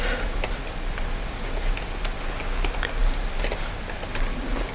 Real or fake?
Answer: real